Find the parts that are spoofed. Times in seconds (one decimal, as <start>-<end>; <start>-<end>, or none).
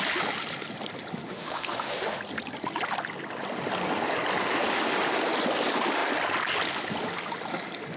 1.3-2.2